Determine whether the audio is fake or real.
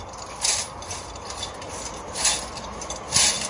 real